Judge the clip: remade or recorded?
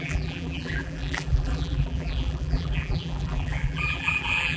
remade